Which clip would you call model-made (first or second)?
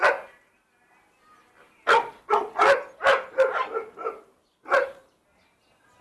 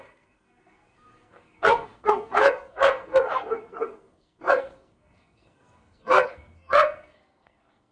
second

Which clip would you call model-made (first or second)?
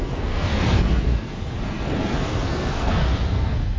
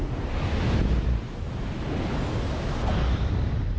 first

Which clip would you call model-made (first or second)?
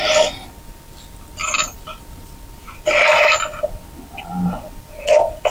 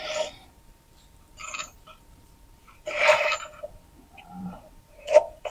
second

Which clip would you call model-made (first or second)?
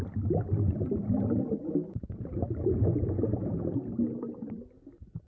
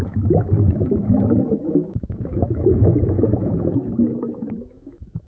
second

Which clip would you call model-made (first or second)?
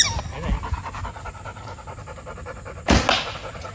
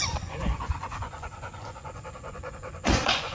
second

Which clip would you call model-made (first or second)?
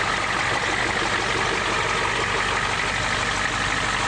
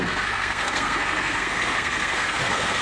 second